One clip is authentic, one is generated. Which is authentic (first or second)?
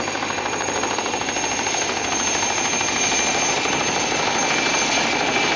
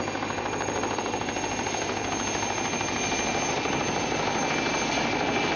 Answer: second